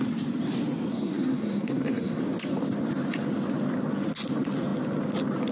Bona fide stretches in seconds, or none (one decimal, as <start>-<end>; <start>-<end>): 0.0-0.9; 2.2-5.5